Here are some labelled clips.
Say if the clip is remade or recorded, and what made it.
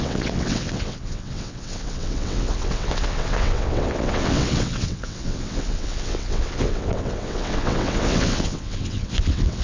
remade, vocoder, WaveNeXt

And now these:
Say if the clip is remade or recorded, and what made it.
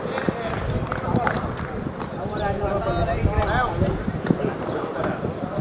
recorded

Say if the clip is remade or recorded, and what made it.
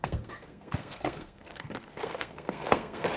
remade, codec, SNAC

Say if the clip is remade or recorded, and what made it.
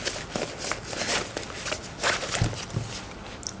recorded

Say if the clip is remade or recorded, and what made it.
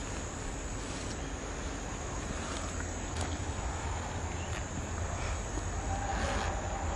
recorded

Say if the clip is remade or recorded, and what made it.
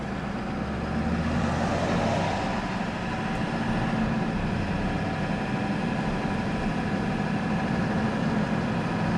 recorded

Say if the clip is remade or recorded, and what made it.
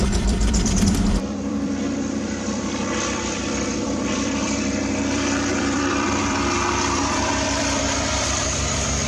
remade, vocoder, BigVGAN v2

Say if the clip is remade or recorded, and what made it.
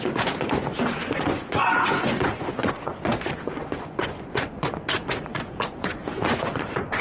remade, vocoder, Vocos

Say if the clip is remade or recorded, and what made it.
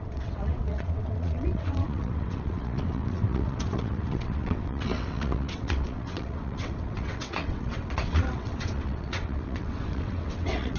remade, vocoder, WaveNeXt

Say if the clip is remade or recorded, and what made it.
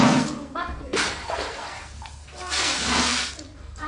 remade, codec, SNAC